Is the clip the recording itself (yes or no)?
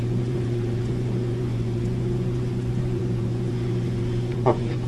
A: no